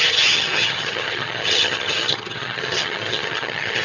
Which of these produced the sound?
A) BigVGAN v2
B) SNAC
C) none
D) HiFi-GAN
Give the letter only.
D